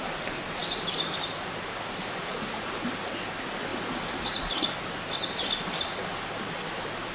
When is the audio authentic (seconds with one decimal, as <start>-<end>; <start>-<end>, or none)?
0.0-7.1